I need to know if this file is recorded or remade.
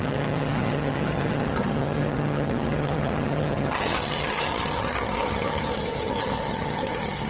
remade